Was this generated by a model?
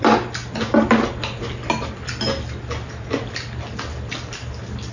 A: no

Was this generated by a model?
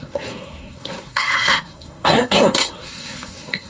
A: yes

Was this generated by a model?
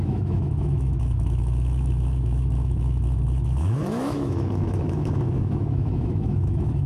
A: yes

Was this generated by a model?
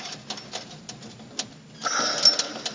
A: no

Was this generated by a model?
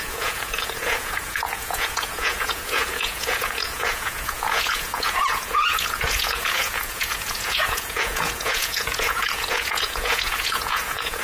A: yes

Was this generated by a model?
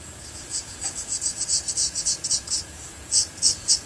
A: yes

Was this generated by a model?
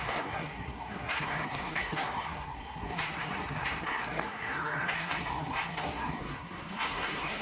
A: yes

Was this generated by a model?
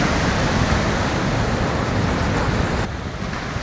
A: no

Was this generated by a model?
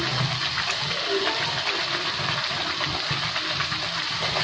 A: no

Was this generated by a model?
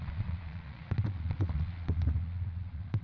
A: yes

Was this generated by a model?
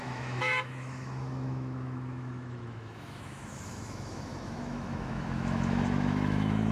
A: yes